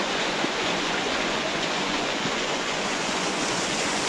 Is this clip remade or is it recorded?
remade